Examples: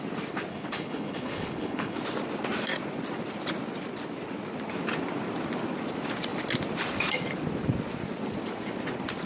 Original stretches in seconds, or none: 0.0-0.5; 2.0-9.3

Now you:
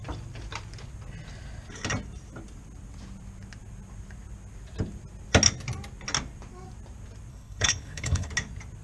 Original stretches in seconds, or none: 0.0-7.3; 8.3-8.8

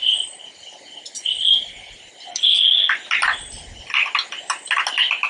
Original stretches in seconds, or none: 0.0-2.3; 2.9-5.3

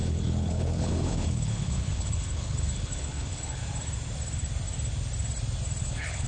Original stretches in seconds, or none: 3.6-5.8

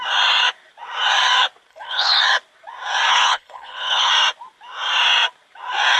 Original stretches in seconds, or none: 0.0-1.7; 2.2-3.1; 4.1-6.0

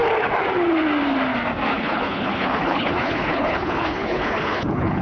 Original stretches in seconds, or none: 0.0-1.7

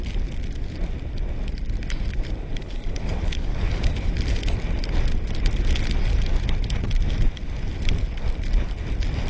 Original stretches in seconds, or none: 0.0-2.6; 4.1-9.3